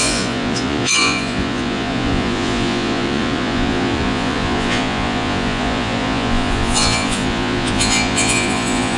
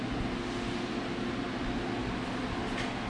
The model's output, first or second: first